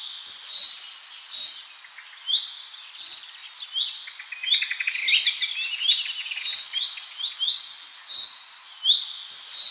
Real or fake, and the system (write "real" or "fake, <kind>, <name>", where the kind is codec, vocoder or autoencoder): real